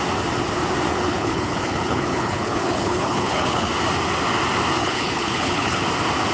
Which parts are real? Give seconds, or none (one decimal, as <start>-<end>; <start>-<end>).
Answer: 0.0-0.9; 3.7-4.8; 5.8-6.3